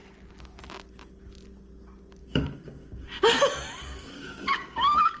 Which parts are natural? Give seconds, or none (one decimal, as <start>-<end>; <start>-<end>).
0.0-2.2; 3.4-3.8